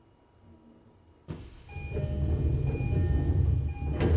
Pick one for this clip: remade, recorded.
recorded